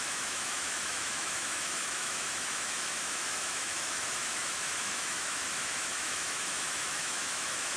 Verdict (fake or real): fake